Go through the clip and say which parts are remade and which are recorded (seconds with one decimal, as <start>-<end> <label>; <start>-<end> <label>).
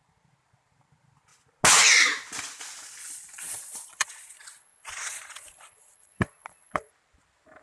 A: 0.0-3.0 recorded; 3.0-6.9 remade; 6.9-7.6 recorded